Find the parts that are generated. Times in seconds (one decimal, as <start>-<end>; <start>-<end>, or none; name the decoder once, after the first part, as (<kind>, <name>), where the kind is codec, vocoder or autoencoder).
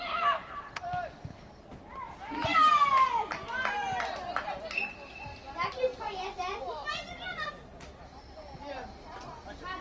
none